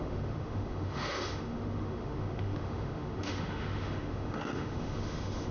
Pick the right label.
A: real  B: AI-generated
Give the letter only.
B